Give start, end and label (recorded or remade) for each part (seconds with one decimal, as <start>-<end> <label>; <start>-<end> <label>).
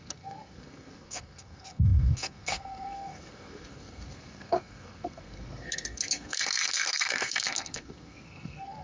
0.0-8.8 remade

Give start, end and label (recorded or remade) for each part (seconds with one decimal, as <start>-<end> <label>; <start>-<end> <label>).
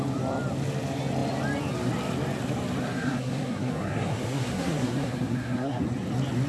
0.0-2.8 recorded; 2.8-5.8 remade; 5.8-6.5 recorded